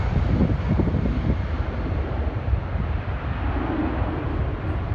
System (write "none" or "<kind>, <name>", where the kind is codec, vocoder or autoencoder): none